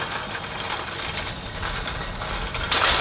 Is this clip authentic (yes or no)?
yes